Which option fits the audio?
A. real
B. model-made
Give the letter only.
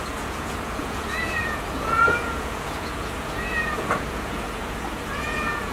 B